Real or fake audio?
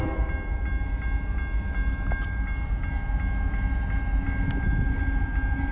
real